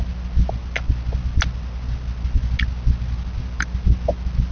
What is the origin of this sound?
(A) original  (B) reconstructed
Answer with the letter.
A